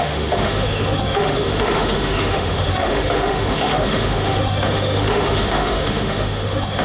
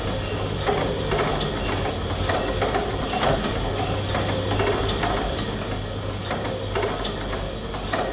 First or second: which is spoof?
first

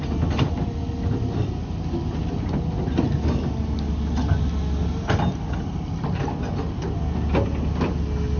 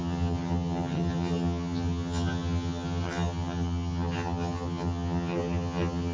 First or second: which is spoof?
second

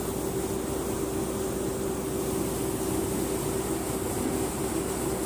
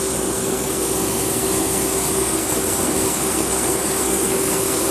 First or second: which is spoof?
second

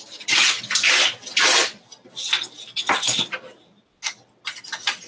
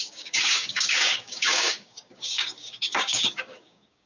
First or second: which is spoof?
second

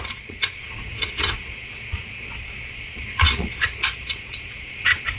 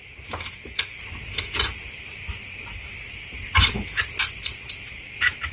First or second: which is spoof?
first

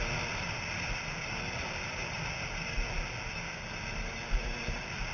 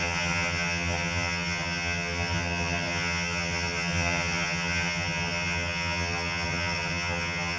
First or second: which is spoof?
second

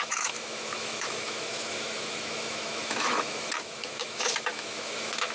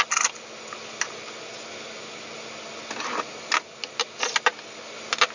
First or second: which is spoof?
first